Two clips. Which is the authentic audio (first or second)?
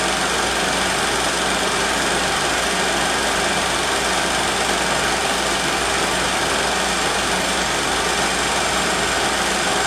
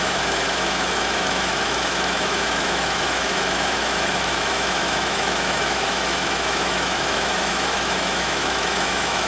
first